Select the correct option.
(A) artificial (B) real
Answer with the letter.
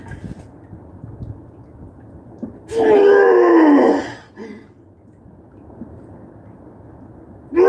B